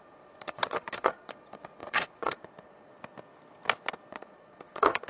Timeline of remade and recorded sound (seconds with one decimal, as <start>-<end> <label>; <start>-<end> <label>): 0.0-2.9 remade; 2.9-4.1 recorded; 4.1-5.1 remade